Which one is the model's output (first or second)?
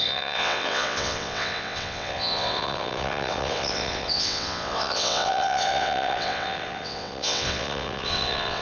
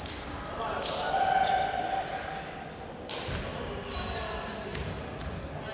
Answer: first